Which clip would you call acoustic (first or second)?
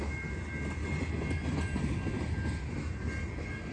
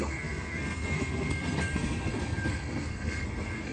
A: first